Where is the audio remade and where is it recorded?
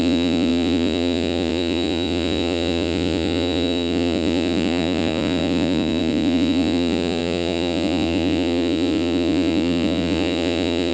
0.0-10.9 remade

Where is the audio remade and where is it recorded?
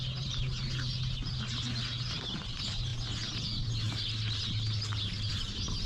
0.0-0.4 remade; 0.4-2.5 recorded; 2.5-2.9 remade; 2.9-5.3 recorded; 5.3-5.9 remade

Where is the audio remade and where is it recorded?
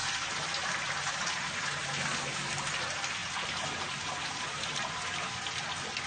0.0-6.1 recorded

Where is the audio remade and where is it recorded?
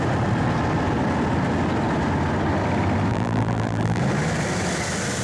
0.0-3.1 recorded; 3.1-4.0 remade; 4.0-5.2 recorded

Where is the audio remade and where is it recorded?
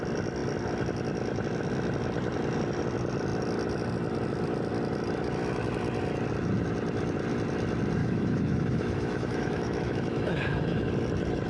0.0-8.0 recorded; 8.0-10.9 remade; 10.9-11.5 recorded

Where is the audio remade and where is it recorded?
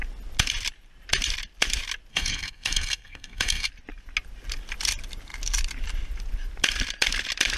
0.0-2.1 recorded; 2.1-3.7 remade; 3.7-7.6 recorded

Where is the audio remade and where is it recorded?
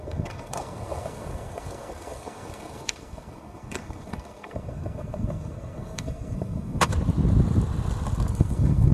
0.0-6.9 remade; 6.9-8.3 recorded; 8.3-8.9 remade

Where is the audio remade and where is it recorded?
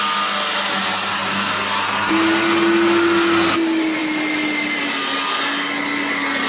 0.0-6.5 recorded